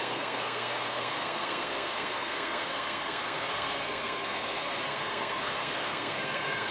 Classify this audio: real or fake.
fake